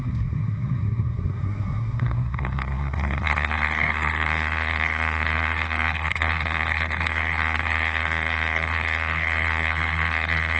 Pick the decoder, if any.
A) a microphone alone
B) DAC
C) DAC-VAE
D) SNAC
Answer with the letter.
D